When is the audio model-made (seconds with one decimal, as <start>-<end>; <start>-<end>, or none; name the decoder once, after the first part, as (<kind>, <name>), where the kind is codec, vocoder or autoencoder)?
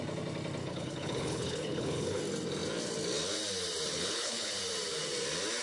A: 0.6-2.2 (codec, HILCodec); 3.9-4.6